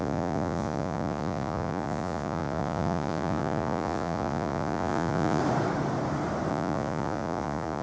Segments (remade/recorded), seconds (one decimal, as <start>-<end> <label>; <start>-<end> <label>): 0.0-5.4 remade; 5.4-6.5 recorded; 6.5-7.8 remade